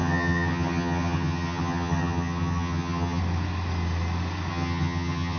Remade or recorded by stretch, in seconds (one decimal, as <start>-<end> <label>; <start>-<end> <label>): 0.0-3.2 remade; 3.2-4.5 recorded; 4.5-5.4 remade